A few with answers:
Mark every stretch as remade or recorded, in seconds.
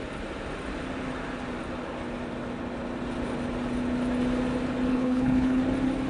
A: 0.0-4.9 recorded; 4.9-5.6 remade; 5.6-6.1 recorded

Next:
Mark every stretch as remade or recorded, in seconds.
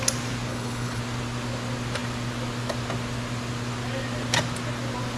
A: 0.0-0.5 recorded; 0.5-1.0 remade; 1.0-5.2 recorded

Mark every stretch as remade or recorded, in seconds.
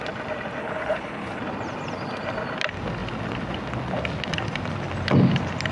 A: 0.0-0.6 recorded; 0.6-1.4 remade; 1.4-5.7 recorded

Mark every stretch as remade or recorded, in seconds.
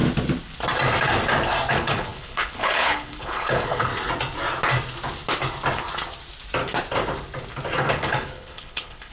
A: 0.0-1.7 recorded; 1.7-3.9 remade; 3.9-7.9 recorded; 7.9-9.1 remade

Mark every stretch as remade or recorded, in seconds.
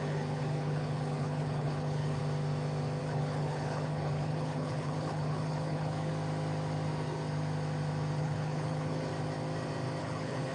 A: 0.0-2.2 remade; 2.2-3.0 recorded; 3.0-6.1 remade; 6.1-8.2 recorded; 8.2-9.1 remade; 9.1-10.0 recorded; 10.0-10.5 remade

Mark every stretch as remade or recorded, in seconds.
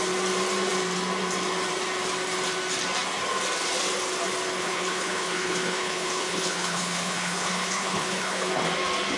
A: 0.0-4.6 recorded; 4.6-8.5 remade; 8.5-9.2 recorded